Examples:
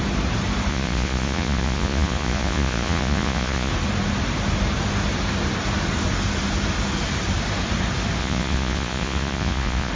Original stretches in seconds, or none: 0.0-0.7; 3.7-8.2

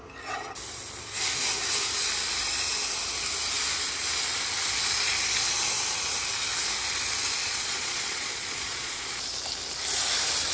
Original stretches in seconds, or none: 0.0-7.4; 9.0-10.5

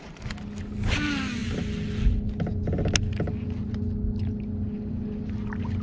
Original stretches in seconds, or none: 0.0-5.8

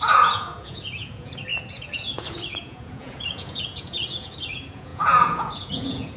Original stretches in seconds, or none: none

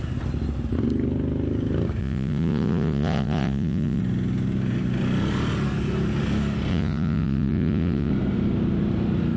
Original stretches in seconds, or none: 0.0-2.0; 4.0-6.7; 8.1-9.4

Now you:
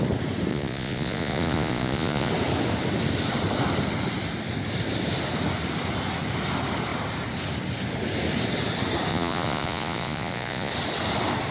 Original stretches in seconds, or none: 0.0-0.5; 2.3-9.1; 10.7-11.5